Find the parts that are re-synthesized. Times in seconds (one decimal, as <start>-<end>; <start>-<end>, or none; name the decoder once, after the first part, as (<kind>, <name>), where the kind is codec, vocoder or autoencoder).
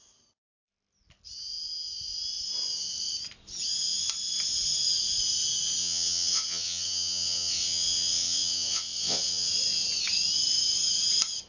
5.8-9.5 (vocoder, WaveNeXt)